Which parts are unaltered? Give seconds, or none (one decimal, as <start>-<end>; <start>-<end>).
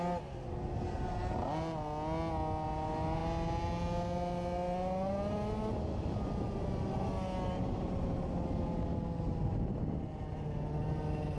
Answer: 0.0-11.4